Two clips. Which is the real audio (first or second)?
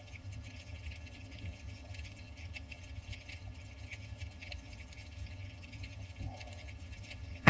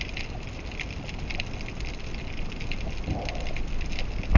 second